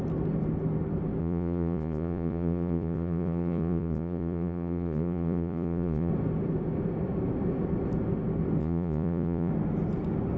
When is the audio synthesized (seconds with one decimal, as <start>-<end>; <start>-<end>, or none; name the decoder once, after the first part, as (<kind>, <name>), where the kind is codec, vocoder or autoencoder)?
1.2-6.1 (vocoder, Vocos); 8.6-9.5